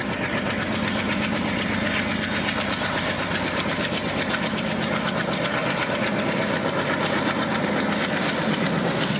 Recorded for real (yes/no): yes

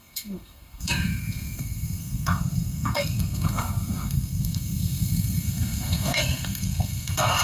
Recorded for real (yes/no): no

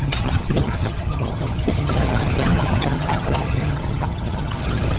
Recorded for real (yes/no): no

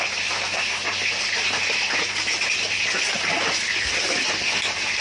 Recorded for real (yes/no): yes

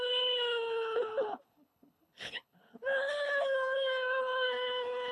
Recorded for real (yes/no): no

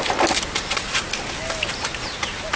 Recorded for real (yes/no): yes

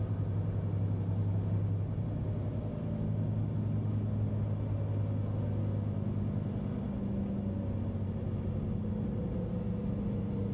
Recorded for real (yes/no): yes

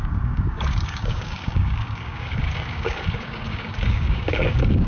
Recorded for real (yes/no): no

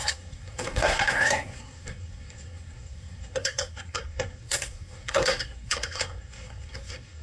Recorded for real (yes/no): no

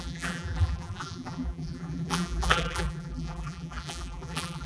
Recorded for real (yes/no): no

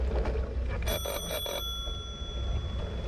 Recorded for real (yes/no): yes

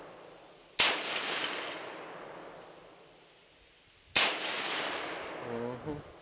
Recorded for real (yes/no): yes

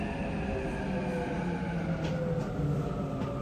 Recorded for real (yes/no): yes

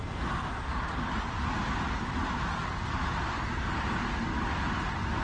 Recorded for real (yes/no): yes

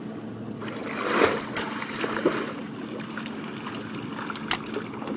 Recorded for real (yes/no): yes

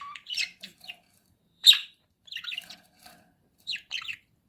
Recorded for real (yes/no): no